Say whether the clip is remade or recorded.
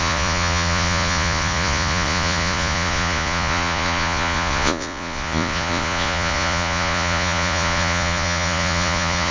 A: remade